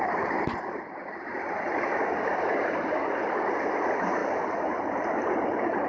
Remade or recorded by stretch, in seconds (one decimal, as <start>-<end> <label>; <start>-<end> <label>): 0.0-5.9 recorded